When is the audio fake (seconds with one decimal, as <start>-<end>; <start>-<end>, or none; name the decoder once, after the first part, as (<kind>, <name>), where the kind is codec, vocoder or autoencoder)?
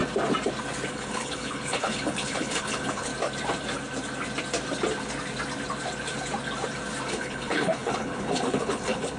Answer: 0.9-3.1 (codec, HILCodec); 7.1-9.2